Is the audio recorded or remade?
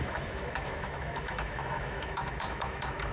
remade